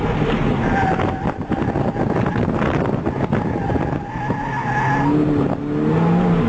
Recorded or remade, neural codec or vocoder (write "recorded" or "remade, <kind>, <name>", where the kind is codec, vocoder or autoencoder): recorded